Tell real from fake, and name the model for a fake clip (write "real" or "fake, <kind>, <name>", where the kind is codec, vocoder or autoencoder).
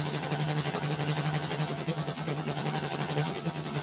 fake, vocoder, HiFi-GAN